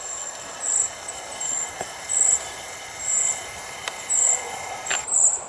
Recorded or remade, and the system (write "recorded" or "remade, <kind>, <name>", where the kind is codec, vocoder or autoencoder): remade, vocoder, BigVGAN v2